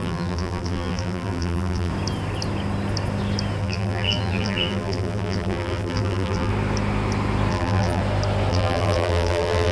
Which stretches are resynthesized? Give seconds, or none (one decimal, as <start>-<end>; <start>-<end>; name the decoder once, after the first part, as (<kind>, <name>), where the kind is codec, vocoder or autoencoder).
0.0-1.9 (vocoder, BigVGAN v2); 3.6-6.5; 7.5-8.0; 8.5-9.7